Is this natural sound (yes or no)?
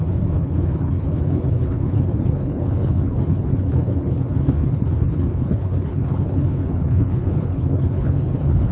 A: no